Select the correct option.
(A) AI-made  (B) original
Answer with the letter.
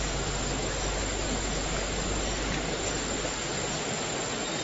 B